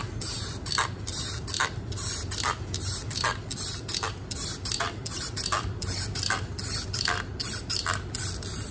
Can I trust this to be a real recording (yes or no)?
yes